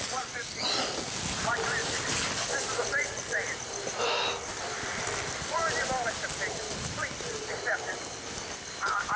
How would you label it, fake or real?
real